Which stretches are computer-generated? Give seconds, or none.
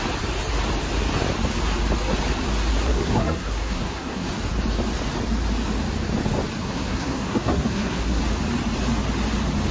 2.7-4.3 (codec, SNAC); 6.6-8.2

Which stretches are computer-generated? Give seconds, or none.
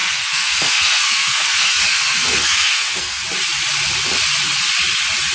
0.0-3.2 (codec, SNAC)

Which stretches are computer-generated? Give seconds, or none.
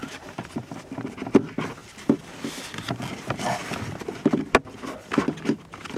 0.0-0.6 (vocoder, BigVGAN v2); 1.8-2.5; 3.6-4.7